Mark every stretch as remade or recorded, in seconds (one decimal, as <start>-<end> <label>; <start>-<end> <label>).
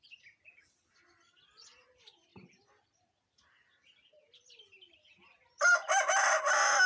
0.0-6.9 recorded